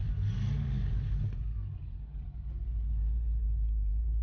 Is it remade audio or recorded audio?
recorded